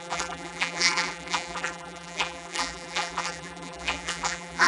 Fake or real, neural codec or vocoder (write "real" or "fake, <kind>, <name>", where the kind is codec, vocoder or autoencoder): fake, vocoder, BigVGAN v2